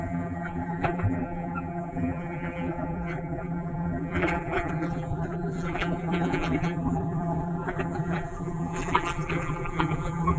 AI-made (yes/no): yes